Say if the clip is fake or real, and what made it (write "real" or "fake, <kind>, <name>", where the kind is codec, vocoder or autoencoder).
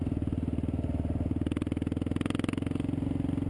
real